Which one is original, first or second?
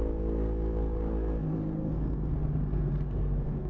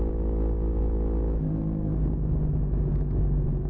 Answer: second